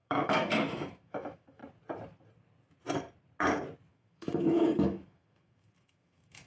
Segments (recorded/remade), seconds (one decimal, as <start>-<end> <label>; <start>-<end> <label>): 0.0-1.6 remade; 1.6-3.9 recorded; 3.9-6.5 remade